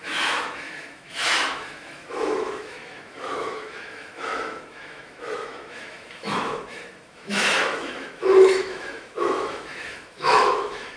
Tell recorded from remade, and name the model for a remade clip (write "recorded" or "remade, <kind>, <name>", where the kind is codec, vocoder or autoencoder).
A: remade, autoencoder, DAC-VAE